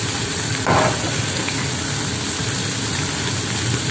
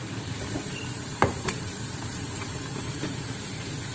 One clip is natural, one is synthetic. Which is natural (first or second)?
first